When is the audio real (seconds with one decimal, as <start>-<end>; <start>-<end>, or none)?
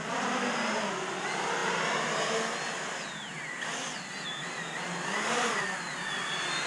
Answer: 0.0-6.7